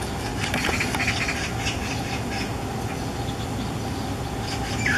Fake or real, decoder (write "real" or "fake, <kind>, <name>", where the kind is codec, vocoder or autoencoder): real